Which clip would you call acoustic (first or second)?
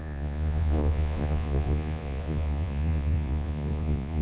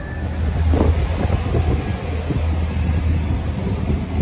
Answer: second